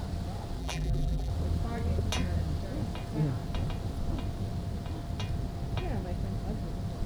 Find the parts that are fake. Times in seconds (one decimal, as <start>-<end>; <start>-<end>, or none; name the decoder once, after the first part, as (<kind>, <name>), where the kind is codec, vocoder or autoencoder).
0.6-1.3 (vocoder, BigVGAN v2)